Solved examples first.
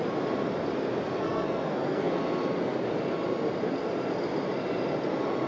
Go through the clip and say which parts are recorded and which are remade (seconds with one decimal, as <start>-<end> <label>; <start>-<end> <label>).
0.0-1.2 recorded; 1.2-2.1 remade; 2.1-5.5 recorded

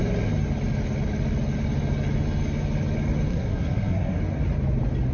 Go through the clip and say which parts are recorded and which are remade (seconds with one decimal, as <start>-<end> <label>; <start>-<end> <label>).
0.0-3.3 recorded; 3.3-4.2 remade; 4.2-5.1 recorded

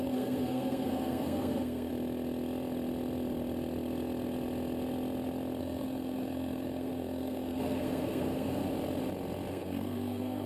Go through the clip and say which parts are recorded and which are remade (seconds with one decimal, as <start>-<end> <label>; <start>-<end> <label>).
0.0-1.9 remade; 1.9-5.6 recorded; 5.6-8.6 remade; 8.6-9.5 recorded; 9.5-10.5 remade

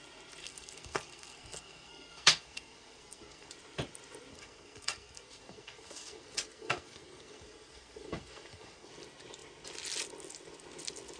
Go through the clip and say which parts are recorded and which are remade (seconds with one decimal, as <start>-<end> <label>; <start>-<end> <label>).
0.0-0.4 recorded; 0.4-3.5 remade; 3.5-4.3 recorded; 4.3-8.9 remade; 8.9-11.2 recorded

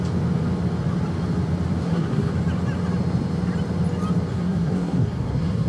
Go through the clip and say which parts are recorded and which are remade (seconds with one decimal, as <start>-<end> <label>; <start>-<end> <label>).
0.0-1.8 recorded; 1.8-2.3 remade; 2.3-4.3 recorded; 4.3-5.7 remade

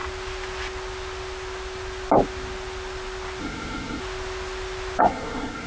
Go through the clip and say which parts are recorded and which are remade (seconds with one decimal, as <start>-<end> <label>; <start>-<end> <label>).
0.0-3.4 recorded; 3.4-4.0 remade; 4.0-5.0 recorded; 5.0-5.7 remade

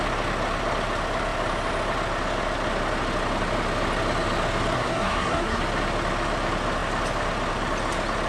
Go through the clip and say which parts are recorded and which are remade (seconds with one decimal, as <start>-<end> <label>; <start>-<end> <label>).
0.0-4.7 recorded; 4.7-5.6 remade; 5.6-8.3 recorded